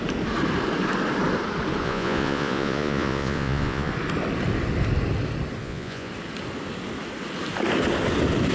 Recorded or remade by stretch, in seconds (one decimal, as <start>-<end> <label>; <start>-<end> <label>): 0.0-1.8 recorded; 1.8-3.9 remade; 3.9-5.6 recorded; 5.6-6.1 remade; 6.1-8.5 recorded